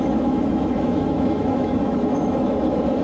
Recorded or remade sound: remade